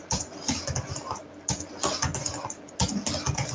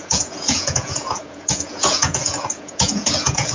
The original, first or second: first